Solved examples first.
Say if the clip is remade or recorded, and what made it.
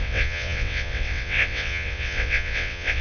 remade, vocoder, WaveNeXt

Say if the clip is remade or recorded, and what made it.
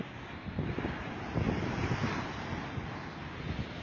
recorded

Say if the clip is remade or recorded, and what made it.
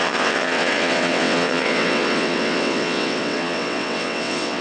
remade, vocoder, WaveNeXt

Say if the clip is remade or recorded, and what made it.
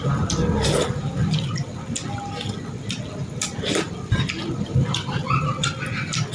recorded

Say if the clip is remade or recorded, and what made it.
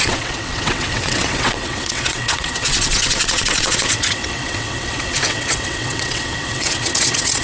remade, vocoder, WaveNeXt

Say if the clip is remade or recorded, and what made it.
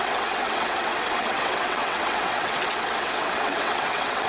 remade, vocoder, WaveNeXt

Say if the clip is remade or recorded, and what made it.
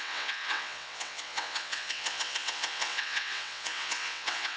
remade, vocoder, WaveNeXt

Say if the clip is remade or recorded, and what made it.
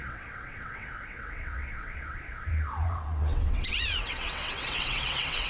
remade, vocoder, WaveNeXt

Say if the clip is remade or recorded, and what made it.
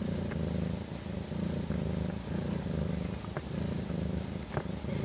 recorded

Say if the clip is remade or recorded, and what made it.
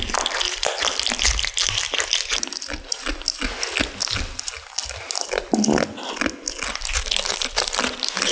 recorded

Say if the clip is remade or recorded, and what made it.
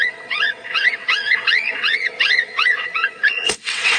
remade, vocoder, WaveNeXt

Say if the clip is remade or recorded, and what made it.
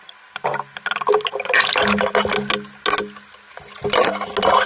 recorded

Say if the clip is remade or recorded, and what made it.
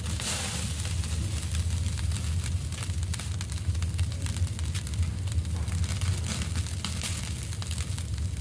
recorded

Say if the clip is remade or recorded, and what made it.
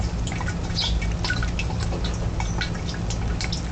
recorded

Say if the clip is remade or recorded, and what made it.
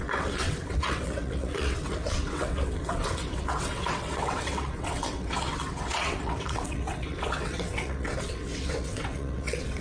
remade, vocoder, WaveNeXt